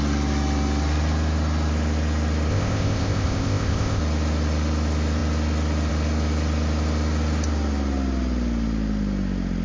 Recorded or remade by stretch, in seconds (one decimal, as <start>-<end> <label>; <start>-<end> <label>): 0.0-2.5 recorded; 2.5-4.0 remade; 4.0-9.6 recorded